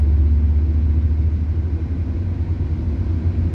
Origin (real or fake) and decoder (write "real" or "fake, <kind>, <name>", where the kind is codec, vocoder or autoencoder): real